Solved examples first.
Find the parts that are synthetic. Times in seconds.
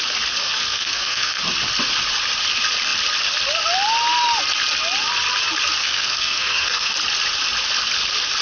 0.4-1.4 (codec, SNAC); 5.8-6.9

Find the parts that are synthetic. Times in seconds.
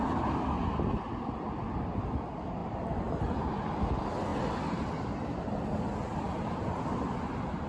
2.6-3.1 (vocoder, BigVGAN v2); 6.1-7.1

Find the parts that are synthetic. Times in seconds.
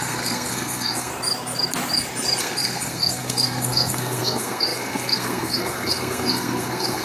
0.0-1.1 (codec, SNAC); 2.4-7.0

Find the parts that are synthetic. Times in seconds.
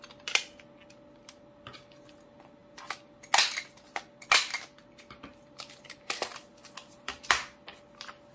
5.3-6.5 (vocoder, BigVGAN v2)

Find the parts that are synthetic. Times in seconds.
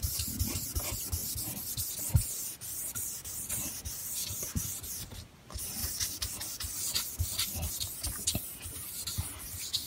1.2-2.0 (vocoder, BigVGAN v2); 4.0-4.9; 5.8-7.7